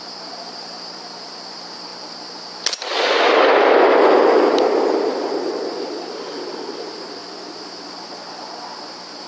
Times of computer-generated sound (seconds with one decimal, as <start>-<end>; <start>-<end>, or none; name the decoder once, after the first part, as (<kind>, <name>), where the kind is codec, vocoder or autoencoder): none